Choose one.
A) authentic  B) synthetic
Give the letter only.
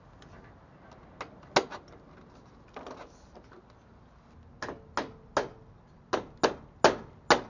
A